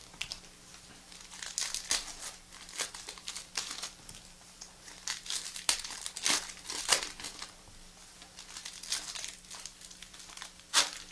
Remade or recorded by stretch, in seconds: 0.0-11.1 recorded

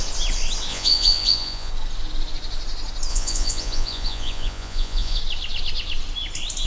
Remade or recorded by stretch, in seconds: 0.0-0.7 recorded; 0.7-1.7 remade; 1.7-3.1 recorded; 3.1-5.2 remade; 5.2-6.7 recorded

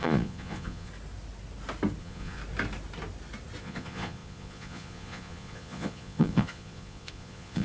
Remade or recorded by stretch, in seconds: 0.0-0.9 remade; 0.9-2.0 recorded; 2.0-2.4 remade; 2.4-3.6 recorded; 3.6-7.6 remade

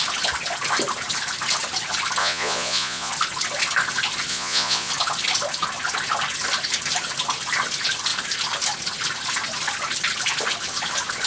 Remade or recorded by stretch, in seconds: 0.0-2.2 recorded; 2.2-3.1 remade; 3.1-4.3 recorded; 4.3-4.9 remade; 4.9-11.3 recorded

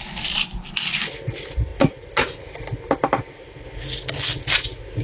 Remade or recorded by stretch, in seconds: 0.0-5.0 recorded